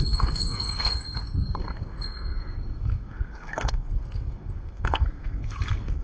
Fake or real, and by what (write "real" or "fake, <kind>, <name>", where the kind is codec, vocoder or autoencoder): fake, codec, SNAC